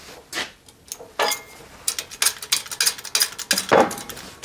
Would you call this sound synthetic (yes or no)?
no